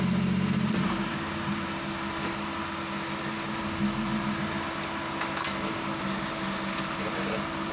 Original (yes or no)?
yes